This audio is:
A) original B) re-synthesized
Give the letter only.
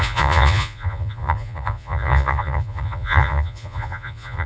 B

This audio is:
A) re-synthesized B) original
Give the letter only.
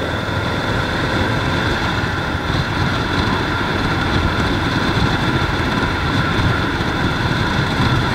A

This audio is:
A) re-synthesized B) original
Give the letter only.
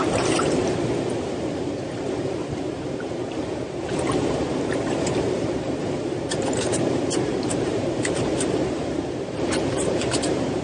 A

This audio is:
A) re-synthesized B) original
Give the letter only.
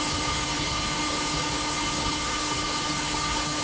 A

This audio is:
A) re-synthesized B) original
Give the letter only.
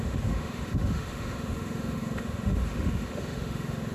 A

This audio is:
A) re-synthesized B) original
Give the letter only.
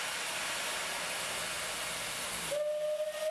B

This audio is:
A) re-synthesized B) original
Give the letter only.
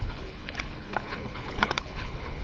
A